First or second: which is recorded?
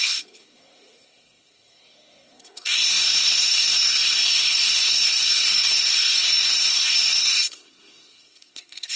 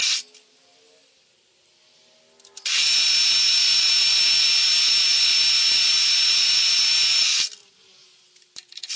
second